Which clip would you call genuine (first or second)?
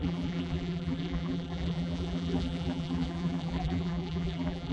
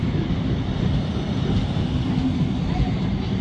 second